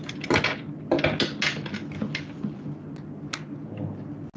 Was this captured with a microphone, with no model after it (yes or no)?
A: yes